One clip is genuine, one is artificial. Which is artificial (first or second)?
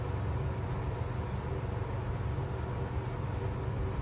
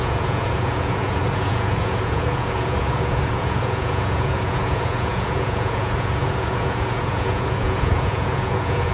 second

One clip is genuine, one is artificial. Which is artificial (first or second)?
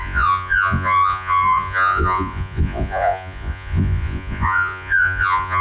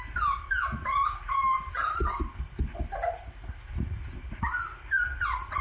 first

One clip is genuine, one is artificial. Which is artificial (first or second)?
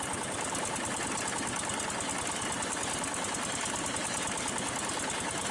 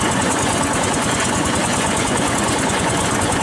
second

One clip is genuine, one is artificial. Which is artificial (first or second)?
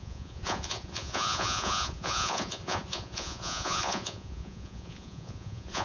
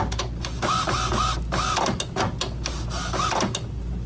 first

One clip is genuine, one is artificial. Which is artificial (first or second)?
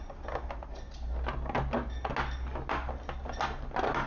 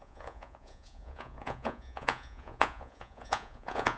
second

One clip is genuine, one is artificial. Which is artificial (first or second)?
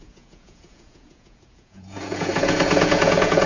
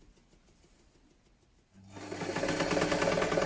first